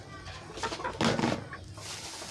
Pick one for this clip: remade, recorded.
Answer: recorded